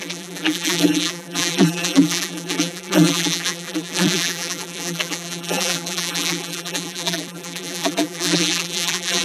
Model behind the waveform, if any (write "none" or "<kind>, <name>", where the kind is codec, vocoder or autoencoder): vocoder, BigVGAN v2